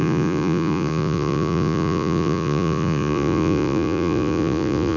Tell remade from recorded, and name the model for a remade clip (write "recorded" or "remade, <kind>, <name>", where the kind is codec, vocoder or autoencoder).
remade, vocoder, Vocos